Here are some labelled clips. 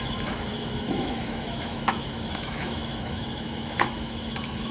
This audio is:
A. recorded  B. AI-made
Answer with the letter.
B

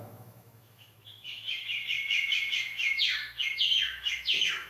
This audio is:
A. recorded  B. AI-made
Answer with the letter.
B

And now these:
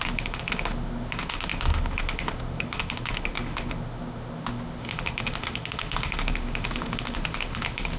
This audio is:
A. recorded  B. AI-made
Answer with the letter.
B